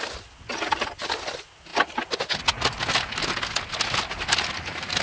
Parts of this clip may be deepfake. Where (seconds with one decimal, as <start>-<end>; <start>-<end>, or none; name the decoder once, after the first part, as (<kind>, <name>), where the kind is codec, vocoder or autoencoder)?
none